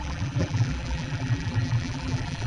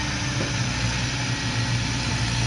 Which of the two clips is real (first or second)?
second